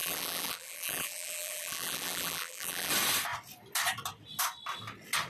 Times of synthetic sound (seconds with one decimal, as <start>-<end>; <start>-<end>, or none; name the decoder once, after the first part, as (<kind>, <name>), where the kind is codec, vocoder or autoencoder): 0.0-2.9 (vocoder, BigVGAN v2)